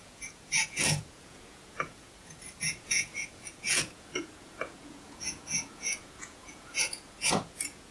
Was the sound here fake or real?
fake